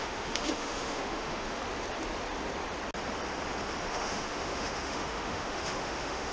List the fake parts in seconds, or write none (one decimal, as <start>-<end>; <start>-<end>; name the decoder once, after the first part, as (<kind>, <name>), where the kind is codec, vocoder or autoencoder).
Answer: 0.0-1.6 (autoencoder, DAC-VAE); 3.9-6.3